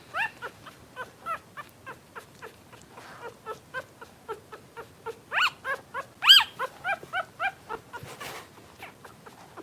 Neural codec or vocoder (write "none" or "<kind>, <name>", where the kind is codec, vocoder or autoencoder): none